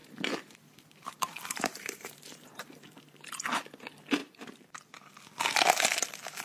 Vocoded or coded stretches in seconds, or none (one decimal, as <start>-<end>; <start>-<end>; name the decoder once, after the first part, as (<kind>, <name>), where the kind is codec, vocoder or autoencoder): 0.0-3.4 (vocoder, BigVGAN v2); 4.2-5.1

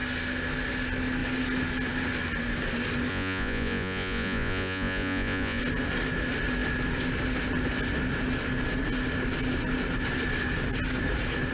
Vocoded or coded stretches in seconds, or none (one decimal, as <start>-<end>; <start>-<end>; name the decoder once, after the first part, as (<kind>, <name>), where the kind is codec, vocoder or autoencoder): 3.1-5.6 (vocoder, Vocos)

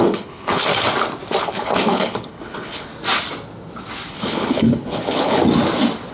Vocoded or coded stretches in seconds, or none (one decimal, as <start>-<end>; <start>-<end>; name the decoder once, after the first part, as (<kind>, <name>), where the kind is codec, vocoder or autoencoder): 0.0-0.7 (codec, HILCodec); 1.4-2.9; 4.1-5.4

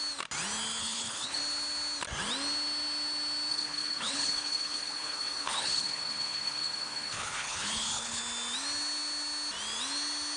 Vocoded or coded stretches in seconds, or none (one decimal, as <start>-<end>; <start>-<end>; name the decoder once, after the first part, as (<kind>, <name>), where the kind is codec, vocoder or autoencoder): 0.8-1.4 (codec, HILCodec); 3.5-8.2

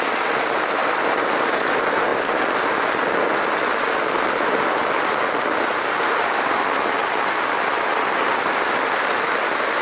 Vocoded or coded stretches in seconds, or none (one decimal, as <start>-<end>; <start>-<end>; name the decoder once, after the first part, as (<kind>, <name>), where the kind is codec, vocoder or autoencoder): none

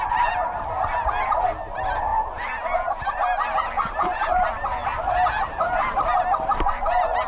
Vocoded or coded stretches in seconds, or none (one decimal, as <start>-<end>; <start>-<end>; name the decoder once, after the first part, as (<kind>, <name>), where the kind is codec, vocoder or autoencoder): none

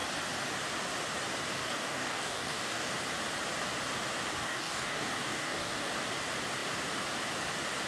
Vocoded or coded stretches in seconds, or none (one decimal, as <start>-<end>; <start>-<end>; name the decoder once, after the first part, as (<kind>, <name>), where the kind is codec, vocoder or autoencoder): 1.6-2.9 (codec, DAC); 4.3-5.9